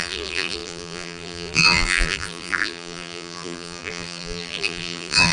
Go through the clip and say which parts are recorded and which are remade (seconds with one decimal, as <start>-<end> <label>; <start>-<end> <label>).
0.0-5.3 remade